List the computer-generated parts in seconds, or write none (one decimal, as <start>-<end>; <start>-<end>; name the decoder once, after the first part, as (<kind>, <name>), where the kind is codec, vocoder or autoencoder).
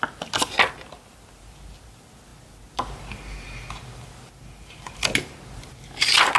none